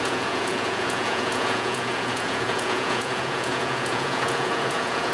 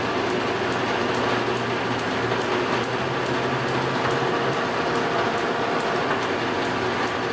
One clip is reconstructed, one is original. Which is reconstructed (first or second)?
first